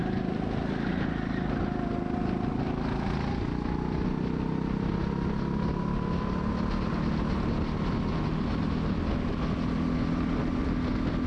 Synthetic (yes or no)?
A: no